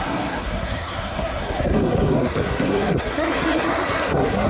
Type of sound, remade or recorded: remade